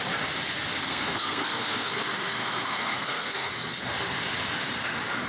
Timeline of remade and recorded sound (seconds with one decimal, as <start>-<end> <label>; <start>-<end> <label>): 0.0-0.9 recorded; 0.9-3.5 remade; 3.5-5.3 recorded